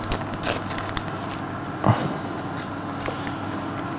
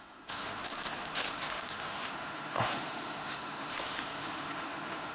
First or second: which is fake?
second